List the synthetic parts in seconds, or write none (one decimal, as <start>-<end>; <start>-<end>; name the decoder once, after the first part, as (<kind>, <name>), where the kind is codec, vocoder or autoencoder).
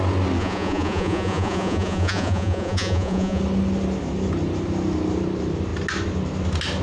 0.4-3.4 (vocoder, Vocos)